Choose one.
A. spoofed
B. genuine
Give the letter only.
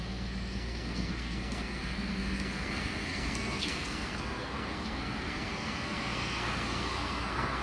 A